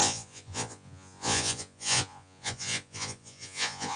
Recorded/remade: remade